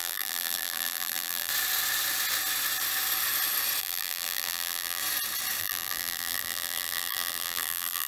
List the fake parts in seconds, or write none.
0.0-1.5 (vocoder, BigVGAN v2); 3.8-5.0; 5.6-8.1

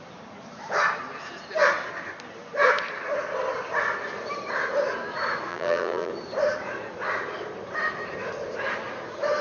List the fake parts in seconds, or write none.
5.5-6.1 (vocoder, BigVGAN v2)

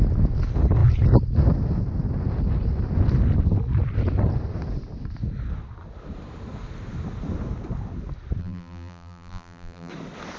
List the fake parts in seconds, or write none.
8.4-9.9 (vocoder, BigVGAN v2)

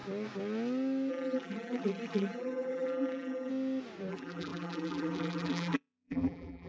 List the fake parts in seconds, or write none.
1.1-3.5 (vocoder, BigVGAN v2); 4.1-6.7

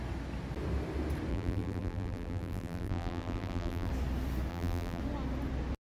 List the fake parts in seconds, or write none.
1.3-3.9 (vocoder, BigVGAN v2); 4.5-5.0

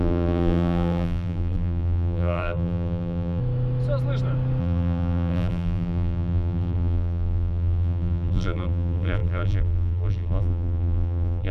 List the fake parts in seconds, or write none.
0.0-3.4 (vocoder, BigVGAN v2); 4.6-11.5